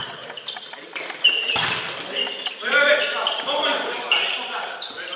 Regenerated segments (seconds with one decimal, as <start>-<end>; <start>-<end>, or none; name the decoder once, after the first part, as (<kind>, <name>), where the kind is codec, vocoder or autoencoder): none